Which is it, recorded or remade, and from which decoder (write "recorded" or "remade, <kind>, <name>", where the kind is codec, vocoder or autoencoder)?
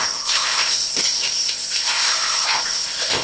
remade, codec, ZipCodec